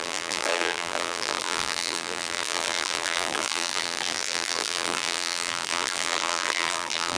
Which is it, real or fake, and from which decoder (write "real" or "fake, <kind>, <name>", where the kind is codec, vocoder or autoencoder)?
fake, vocoder, BigVGAN v2